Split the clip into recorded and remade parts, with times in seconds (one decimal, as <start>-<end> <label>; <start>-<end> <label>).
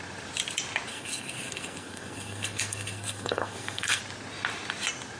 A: 0.0-0.9 recorded; 0.9-4.0 remade; 4.0-5.2 recorded